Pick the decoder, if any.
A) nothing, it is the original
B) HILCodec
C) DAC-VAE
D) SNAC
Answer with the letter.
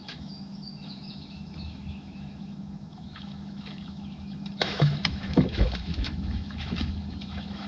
C